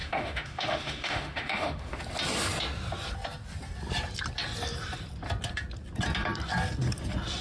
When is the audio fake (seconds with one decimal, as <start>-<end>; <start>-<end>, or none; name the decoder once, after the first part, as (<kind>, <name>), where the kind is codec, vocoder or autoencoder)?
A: 0.0-2.0 (autoencoder, DAC-VAE)